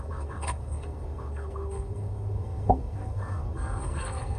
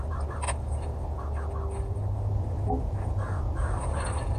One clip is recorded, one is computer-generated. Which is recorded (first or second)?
second